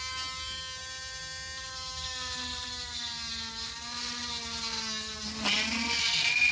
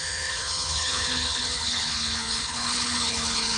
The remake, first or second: second